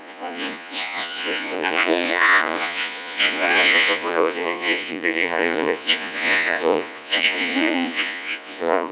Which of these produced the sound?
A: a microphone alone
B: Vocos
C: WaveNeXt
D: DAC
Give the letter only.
B